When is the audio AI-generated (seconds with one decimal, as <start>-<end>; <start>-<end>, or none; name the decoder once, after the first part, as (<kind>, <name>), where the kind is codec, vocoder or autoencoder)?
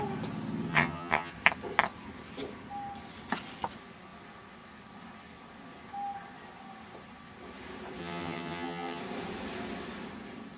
0.7-1.3 (vocoder, HiFi-GAN); 8.0-9.0